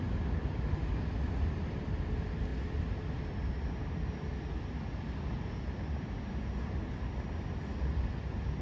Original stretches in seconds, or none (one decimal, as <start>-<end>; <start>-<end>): 0.0-8.6